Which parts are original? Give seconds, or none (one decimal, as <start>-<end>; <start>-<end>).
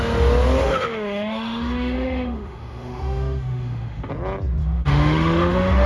0.0-0.6; 4.1-4.6